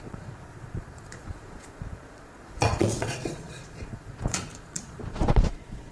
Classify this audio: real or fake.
fake